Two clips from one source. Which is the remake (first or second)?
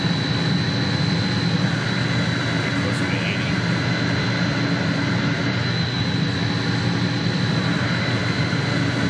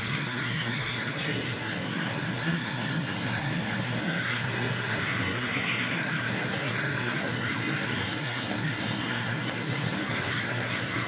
second